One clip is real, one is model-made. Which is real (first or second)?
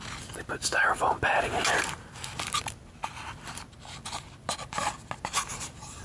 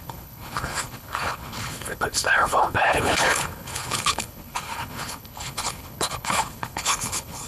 first